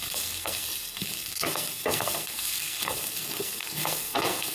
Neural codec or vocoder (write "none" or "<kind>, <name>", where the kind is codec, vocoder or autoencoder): codec, SNAC